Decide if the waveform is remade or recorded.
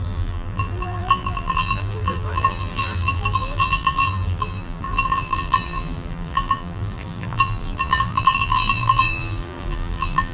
remade